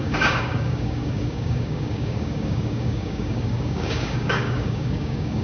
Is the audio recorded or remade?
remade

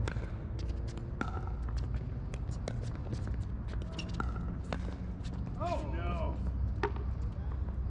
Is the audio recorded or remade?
recorded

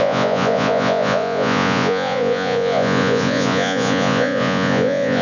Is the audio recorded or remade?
remade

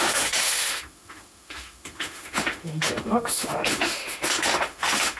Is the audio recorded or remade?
remade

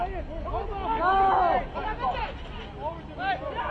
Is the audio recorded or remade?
recorded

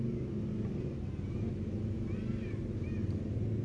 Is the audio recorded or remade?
recorded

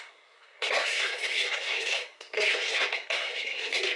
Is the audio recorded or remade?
remade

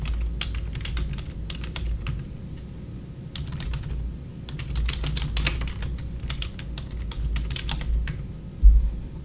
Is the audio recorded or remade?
recorded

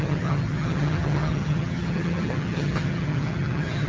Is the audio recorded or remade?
remade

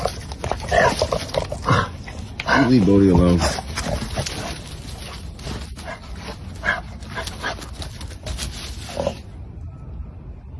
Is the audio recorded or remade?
recorded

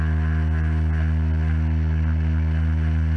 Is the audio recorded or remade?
recorded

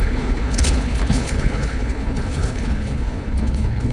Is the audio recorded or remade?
remade